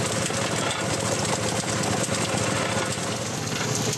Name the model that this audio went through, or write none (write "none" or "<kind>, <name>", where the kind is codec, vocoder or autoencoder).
none